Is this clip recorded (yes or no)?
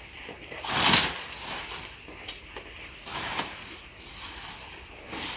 yes